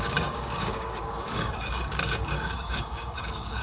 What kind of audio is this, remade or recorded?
remade